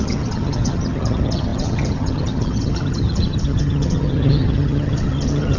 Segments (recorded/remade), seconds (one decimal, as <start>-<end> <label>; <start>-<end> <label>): 0.0-5.6 remade